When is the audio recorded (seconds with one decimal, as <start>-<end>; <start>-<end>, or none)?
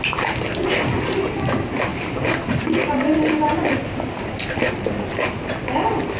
0.0-6.2